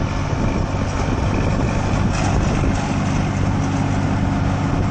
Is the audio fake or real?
real